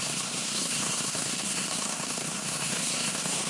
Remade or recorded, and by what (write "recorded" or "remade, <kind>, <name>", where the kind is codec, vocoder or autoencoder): remade, codec, SNAC